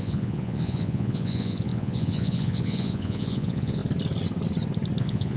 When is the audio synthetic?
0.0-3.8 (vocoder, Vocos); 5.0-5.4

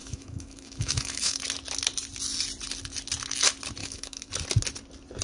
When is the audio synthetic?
0.0-1.4 (autoencoder, DAC-VAE); 3.8-4.3

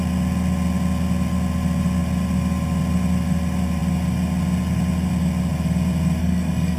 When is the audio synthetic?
6.2-6.8 (codec, SNAC)

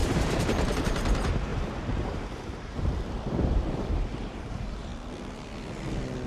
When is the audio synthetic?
0.0-4.9 (vocoder, BigVGAN v2)